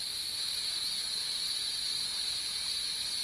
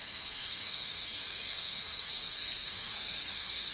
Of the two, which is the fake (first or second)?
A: second